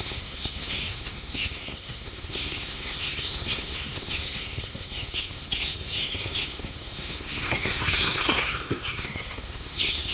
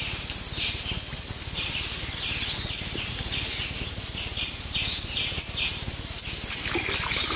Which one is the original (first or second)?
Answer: second